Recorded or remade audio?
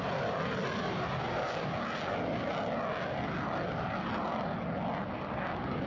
recorded